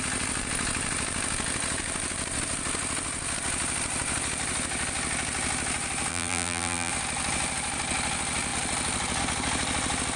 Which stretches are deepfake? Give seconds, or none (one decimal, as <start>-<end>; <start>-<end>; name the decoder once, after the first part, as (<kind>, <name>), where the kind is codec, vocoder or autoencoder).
6.1-6.9 (vocoder, BigVGAN v2)